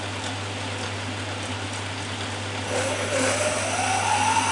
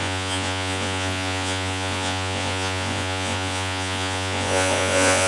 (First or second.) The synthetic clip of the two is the second